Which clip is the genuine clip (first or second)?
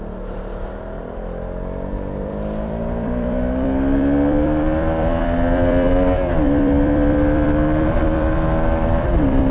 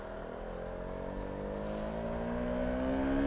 second